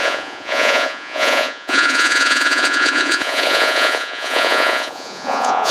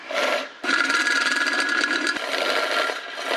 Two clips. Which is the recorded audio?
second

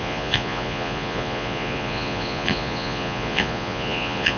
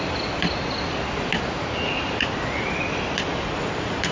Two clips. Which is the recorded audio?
second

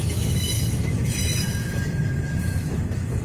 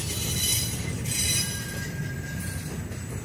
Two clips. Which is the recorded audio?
second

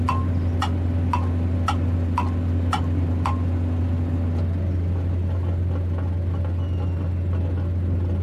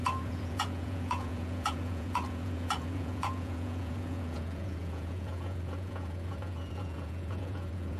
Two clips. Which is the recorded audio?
first